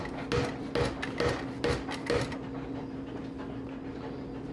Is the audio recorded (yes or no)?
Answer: yes